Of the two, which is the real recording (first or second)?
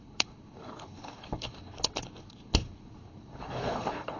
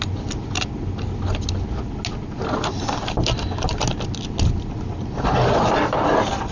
second